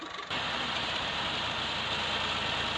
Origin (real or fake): real